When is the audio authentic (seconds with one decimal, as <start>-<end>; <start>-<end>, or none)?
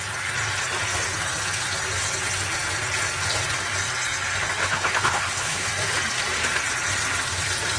0.0-4.6; 5.7-7.8